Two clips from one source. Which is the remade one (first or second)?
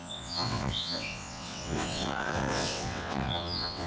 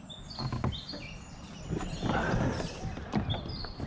first